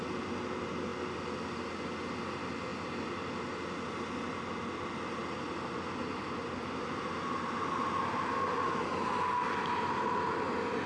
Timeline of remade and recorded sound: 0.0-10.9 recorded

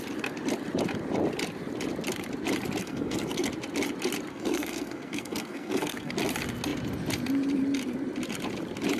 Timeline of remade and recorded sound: 0.0-2.8 recorded; 2.8-3.5 remade; 3.5-4.3 recorded; 4.3-6.1 remade; 6.1-9.0 recorded